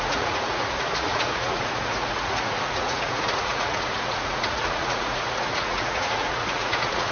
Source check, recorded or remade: remade